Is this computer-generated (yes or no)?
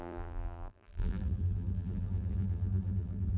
yes